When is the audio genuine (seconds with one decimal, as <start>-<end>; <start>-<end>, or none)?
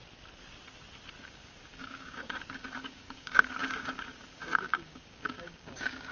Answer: 0.0-1.2